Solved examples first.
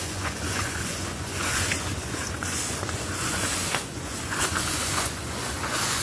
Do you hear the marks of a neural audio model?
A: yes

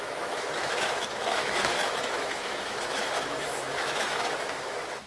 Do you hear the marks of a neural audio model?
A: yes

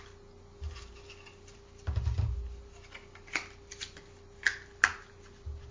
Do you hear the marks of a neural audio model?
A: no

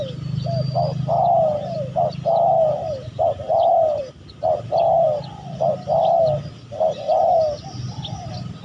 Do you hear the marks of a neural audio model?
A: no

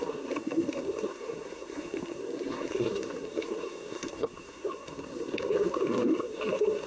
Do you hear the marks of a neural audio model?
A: yes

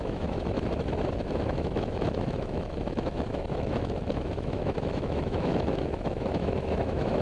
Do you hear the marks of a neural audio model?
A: yes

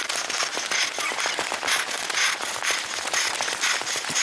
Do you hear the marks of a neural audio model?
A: no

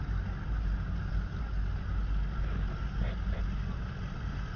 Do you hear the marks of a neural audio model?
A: no